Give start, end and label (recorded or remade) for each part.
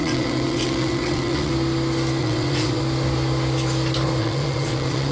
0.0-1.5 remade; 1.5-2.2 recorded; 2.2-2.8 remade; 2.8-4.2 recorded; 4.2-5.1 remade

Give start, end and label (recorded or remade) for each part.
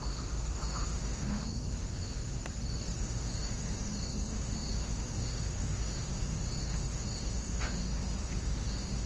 0.0-2.4 remade; 2.4-3.0 recorded; 3.0-9.1 remade